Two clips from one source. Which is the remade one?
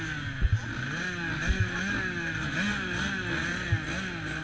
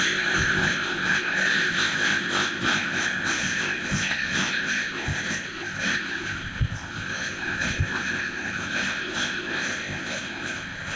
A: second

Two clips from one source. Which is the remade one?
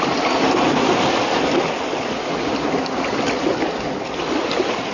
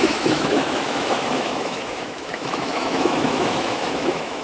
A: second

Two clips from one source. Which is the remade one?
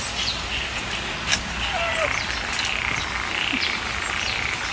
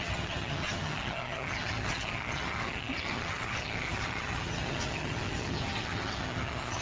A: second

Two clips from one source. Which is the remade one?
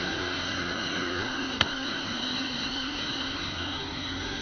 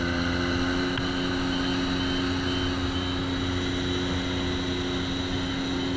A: first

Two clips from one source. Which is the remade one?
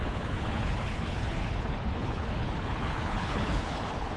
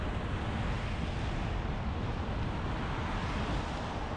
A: first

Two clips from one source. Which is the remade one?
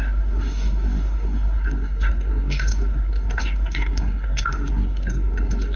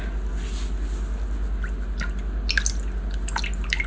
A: first